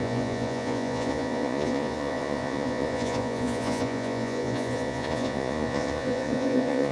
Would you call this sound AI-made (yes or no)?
yes